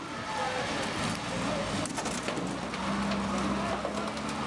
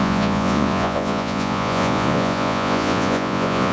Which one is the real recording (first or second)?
first